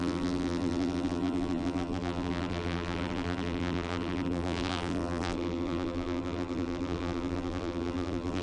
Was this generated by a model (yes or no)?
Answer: yes